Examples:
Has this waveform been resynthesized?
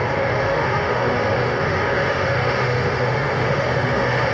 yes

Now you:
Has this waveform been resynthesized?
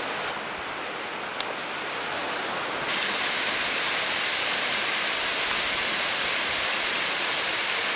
no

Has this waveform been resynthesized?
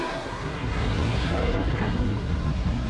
yes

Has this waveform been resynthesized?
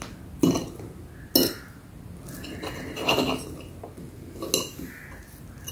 no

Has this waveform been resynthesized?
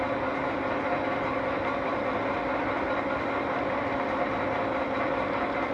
no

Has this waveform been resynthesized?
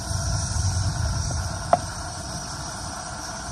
no